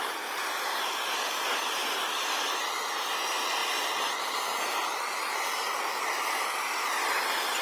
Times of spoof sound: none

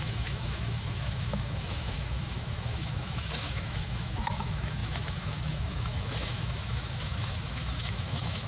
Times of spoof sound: 0.0-8.5 (autoencoder, DAC-VAE)

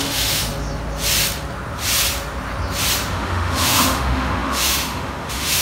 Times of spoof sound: 0.0-0.5 (autoencoder, DAC-VAE); 3.1-5.6

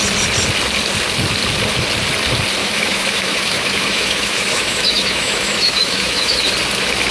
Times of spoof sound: 2.6-6.5 (autoencoder, DAC-VAE)